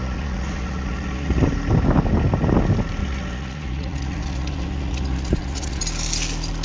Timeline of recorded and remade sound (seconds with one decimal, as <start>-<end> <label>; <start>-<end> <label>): 0.0-1.5 remade; 1.5-3.0 recorded; 3.0-5.8 remade; 5.8-6.6 recorded